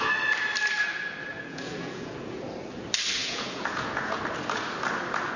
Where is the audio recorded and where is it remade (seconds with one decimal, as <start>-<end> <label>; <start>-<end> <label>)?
0.0-1.3 recorded; 1.3-2.4 remade; 2.4-3.2 recorded; 3.2-4.2 remade; 4.2-5.4 recorded